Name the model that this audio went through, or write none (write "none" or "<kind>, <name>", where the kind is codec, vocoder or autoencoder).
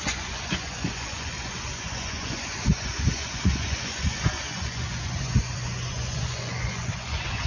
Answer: vocoder, Vocos